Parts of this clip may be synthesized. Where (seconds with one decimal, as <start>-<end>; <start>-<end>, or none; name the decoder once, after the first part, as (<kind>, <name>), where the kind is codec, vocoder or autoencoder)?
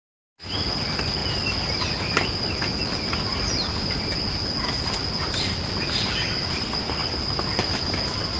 none